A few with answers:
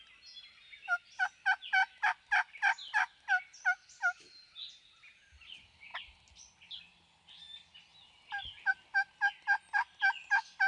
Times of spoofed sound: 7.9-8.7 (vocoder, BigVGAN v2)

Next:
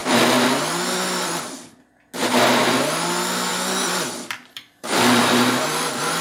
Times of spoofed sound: 0.0-1.9 (vocoder, BigVGAN v2); 3.5-5.5